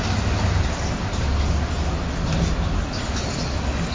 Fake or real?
real